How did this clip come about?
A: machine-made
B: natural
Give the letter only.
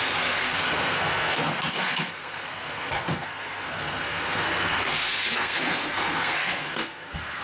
A